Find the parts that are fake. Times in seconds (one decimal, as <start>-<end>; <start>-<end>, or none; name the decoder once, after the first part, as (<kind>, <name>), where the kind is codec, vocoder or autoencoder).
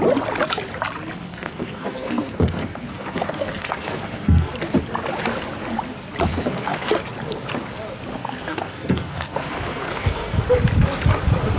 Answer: 1.3-4.5 (codec, SNAC); 6.3-6.9; 8.1-10.4